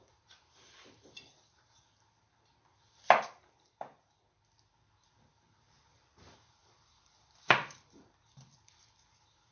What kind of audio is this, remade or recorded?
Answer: remade